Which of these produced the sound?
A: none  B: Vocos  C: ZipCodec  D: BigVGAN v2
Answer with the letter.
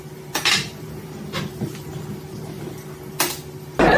D